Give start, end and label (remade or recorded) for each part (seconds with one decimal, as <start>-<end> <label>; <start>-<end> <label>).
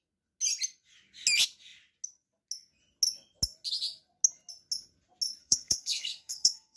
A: 0.0-5.4 recorded; 5.4-6.8 remade